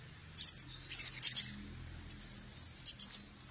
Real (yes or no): no